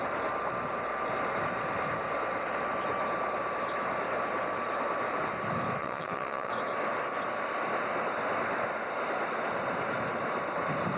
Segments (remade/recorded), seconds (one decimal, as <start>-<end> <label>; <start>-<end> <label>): 0.0-5.8 recorded; 5.8-6.5 remade; 6.5-11.0 recorded